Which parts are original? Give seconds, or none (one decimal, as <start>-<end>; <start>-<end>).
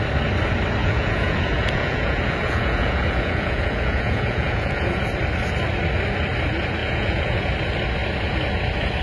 0.0-0.8; 5.0-6.8; 7.5-9.0